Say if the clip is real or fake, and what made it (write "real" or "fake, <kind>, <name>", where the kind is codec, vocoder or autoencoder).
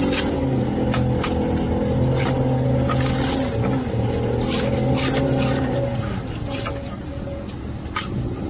real